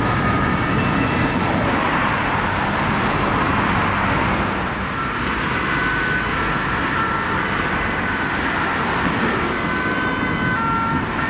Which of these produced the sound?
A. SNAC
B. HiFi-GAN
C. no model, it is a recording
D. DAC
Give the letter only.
C